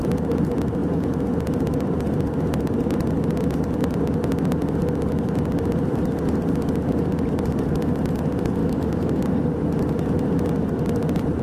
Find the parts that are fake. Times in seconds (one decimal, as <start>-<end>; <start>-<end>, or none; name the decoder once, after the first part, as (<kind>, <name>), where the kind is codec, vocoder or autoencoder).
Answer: 8.6-9.2 (autoencoder, DAC-VAE)